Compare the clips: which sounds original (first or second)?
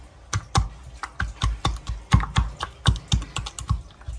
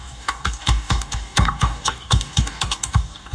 first